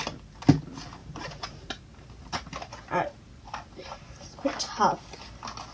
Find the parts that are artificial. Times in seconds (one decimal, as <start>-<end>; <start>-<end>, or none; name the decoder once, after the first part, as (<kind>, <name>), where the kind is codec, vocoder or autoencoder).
1.0-4.4 (vocoder, BigVGAN v2)